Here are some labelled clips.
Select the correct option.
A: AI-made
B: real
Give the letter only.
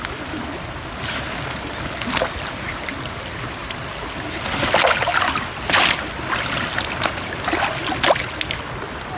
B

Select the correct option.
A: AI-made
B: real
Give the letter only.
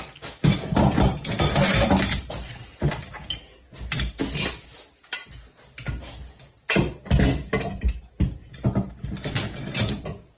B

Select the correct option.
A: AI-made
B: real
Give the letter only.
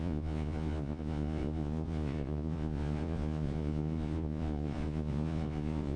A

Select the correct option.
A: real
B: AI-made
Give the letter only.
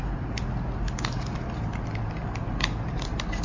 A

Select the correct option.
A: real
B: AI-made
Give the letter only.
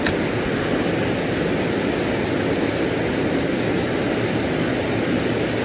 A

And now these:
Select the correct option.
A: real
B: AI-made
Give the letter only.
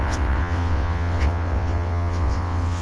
B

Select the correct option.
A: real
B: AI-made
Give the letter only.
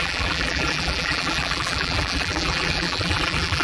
B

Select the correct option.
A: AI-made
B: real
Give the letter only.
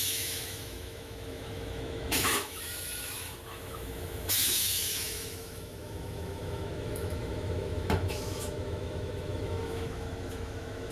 A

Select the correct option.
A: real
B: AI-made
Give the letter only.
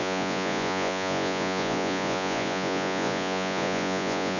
B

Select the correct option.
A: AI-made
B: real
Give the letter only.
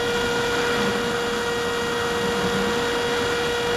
B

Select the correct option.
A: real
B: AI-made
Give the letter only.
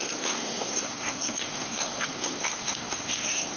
B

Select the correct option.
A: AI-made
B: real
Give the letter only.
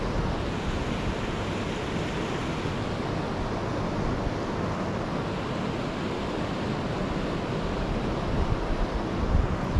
B